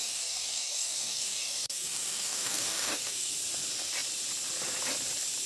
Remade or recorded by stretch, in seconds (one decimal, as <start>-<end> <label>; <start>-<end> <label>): 0.0-3.3 remade; 3.3-5.5 recorded